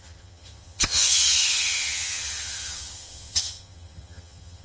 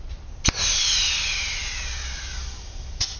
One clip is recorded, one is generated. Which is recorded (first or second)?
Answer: second